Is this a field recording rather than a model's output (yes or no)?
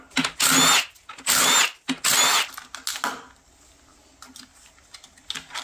yes